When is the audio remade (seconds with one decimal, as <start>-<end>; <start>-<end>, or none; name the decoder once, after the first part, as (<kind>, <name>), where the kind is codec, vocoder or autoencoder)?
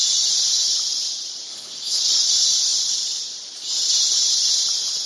1.5-2.0 (codec, HILCodec)